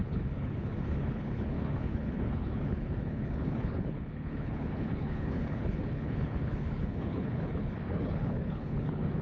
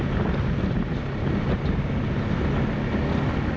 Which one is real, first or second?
second